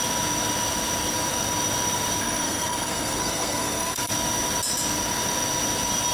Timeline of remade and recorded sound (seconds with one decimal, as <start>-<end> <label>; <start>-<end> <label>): 0.0-2.2 recorded; 2.2-4.1 remade; 4.1-6.1 recorded